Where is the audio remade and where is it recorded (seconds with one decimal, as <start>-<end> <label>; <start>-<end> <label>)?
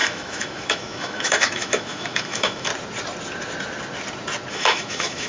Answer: 0.0-2.7 remade; 2.7-4.5 recorded; 4.5-5.3 remade